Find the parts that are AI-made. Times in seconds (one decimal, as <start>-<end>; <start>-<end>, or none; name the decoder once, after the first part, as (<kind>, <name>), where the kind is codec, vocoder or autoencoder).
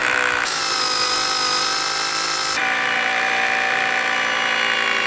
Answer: 0.0-0.6 (autoencoder, DAC-VAE)